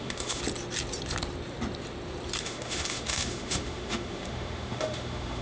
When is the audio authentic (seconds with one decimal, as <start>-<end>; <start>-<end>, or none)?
0.4-2.4